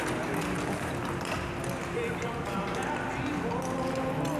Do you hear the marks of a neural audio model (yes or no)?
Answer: no